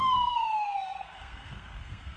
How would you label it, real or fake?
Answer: fake